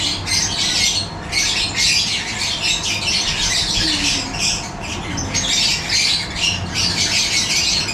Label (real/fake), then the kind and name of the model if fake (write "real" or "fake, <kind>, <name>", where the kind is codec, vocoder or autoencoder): real